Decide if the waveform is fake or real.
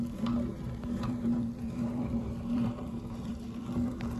fake